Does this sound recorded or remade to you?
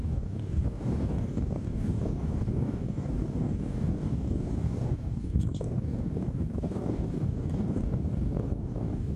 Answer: remade